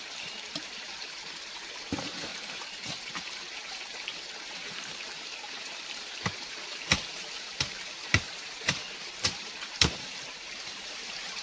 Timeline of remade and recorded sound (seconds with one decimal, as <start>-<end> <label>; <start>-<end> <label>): 0.0-11.4 remade